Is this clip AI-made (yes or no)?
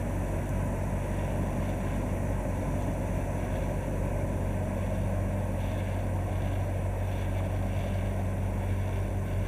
no